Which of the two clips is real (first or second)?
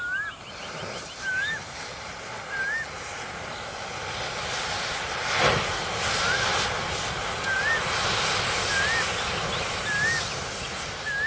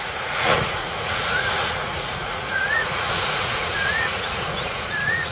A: first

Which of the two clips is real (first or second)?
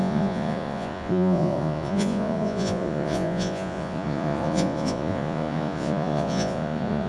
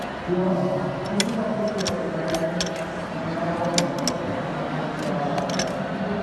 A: second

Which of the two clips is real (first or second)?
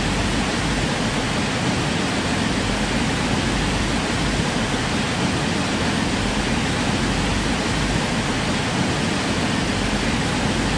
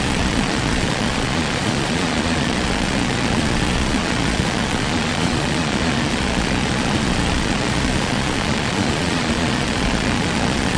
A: first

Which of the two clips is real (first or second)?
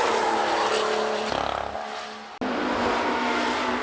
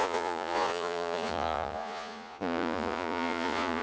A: first